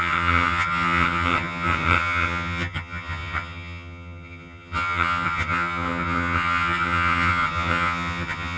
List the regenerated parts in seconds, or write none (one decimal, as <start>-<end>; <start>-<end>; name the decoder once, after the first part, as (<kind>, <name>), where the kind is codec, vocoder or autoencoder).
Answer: 0.0-8.6 (vocoder, HiFi-GAN)